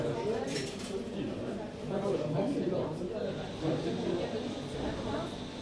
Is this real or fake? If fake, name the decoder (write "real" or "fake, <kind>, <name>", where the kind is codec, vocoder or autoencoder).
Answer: real